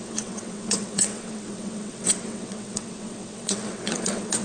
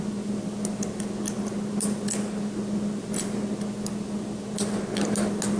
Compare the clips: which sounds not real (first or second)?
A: first